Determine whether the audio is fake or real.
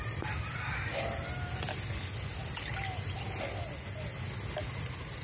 real